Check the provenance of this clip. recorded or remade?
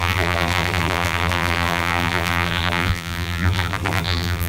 remade